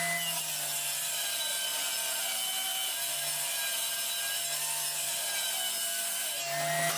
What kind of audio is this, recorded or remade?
recorded